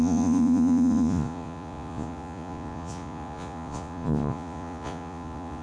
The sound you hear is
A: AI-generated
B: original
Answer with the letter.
A